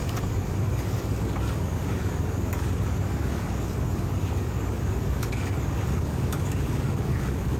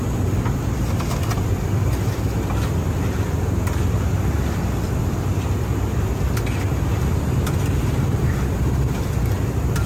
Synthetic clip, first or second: first